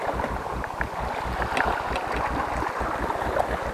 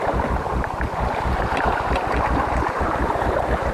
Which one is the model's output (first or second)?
second